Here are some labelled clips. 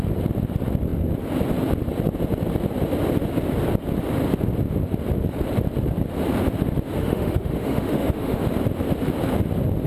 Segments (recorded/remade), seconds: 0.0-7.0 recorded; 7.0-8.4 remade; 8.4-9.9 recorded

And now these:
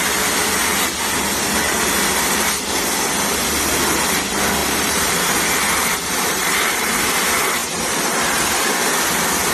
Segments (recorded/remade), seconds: 0.0-4.6 recorded; 4.6-6.7 remade; 6.7-7.6 recorded; 7.6-8.5 remade; 8.5-9.5 recorded

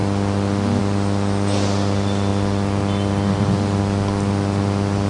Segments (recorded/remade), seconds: 0.0-5.1 recorded

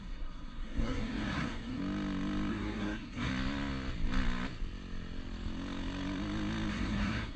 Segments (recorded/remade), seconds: 0.0-1.8 remade; 1.8-2.5 recorded; 2.5-3.3 remade; 3.3-6.7 recorded; 6.7-7.4 remade

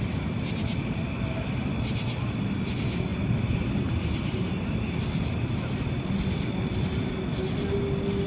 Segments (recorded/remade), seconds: 0.0-8.3 recorded